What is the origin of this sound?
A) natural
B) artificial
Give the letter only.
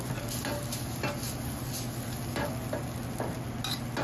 A